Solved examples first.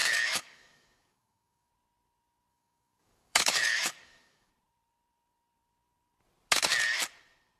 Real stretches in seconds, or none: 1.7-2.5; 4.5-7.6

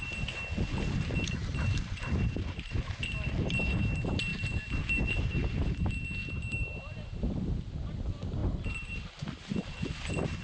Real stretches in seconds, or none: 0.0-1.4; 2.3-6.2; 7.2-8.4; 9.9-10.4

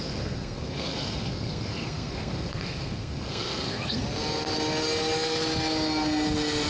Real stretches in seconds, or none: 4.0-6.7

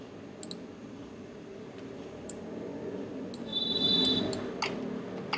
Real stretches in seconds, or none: 0.0-0.8; 2.4-3.5; 4.2-5.4